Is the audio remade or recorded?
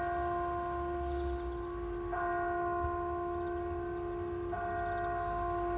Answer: recorded